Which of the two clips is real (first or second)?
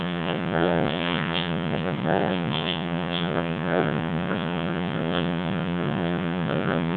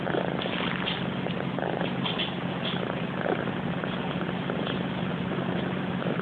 second